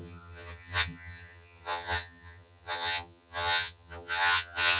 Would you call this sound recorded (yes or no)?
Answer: no